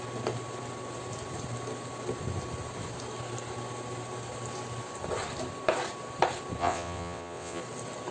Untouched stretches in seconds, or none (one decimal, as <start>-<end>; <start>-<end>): 0.0-6.6; 7.6-8.1